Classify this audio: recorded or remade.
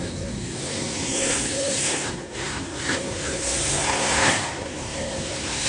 remade